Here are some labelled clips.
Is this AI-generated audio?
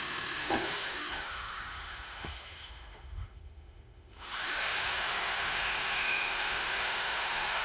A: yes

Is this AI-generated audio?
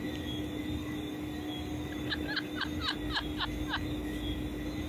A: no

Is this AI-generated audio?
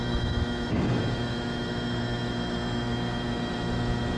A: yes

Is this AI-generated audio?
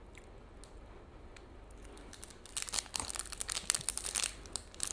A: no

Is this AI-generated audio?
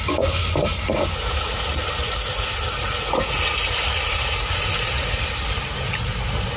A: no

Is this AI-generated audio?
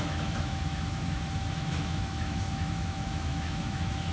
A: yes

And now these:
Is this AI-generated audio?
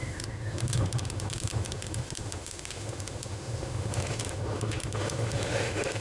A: yes